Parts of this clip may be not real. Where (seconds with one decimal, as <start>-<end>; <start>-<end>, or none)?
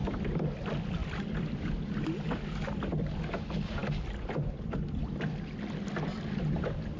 0.0-0.6; 1.0-1.8; 3.8-5.3